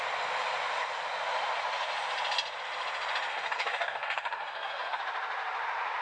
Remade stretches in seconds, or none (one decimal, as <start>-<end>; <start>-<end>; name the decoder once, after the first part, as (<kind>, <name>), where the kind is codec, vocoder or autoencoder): 3.3-5.0 (codec, SNAC)